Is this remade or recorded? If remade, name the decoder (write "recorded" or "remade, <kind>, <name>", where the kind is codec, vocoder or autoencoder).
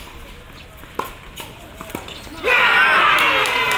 recorded